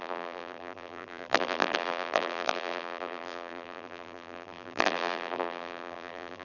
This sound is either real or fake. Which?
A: fake